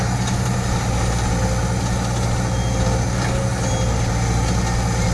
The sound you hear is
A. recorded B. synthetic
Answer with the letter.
A